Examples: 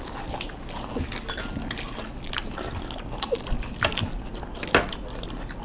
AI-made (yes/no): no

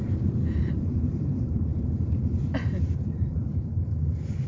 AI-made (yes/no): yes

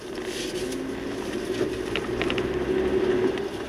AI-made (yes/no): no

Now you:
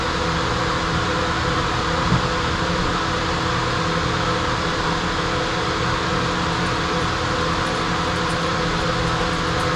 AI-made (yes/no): no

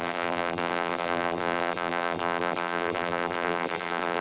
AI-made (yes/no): yes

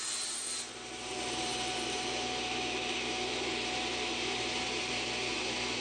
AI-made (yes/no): yes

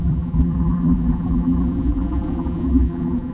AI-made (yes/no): yes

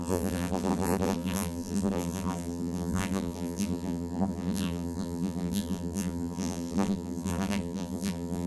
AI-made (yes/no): yes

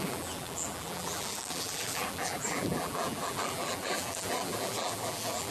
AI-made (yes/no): yes